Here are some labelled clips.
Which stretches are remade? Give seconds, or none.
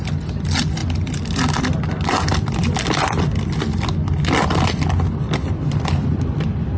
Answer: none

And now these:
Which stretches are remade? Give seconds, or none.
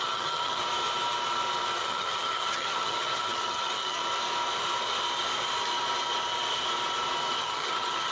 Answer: 0.0-0.6 (vocoder, HiFi-GAN); 1.8-4.0; 7.4-8.1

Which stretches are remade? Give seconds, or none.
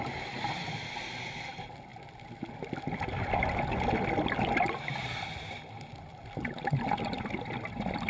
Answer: none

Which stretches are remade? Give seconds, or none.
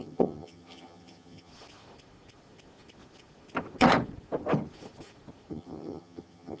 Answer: 0.0-1.5 (vocoder, HiFi-GAN); 5.5-6.6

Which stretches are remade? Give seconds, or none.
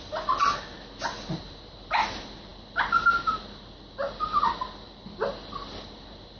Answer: none